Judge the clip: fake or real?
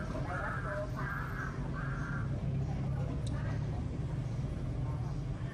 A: real